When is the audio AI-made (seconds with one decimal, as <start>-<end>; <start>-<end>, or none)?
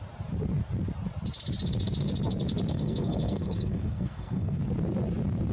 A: 2.7-4.6